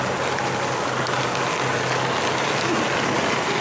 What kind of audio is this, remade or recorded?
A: recorded